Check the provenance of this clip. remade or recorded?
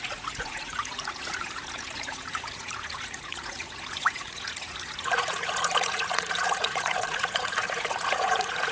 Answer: remade